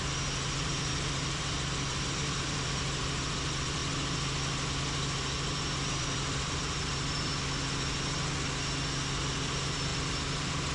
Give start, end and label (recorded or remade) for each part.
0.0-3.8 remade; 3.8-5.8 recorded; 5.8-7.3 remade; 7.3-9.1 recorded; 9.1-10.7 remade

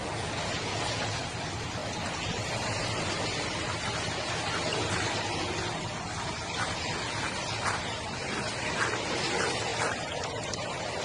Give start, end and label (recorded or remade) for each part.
0.0-11.0 recorded